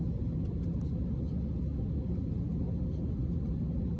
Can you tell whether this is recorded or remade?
recorded